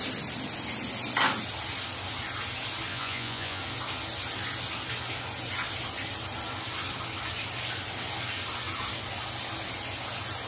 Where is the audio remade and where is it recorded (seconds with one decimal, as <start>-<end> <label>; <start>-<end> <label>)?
0.0-2.9 recorded; 2.9-3.6 remade; 3.6-10.5 recorded